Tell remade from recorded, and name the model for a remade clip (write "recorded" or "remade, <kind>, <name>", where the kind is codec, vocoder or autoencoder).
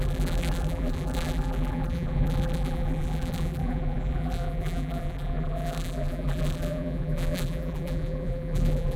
remade, vocoder, BigVGAN v2